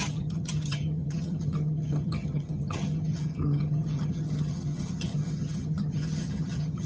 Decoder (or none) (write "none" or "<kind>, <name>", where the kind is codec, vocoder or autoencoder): vocoder, HiFi-GAN